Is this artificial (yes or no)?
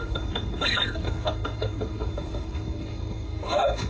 yes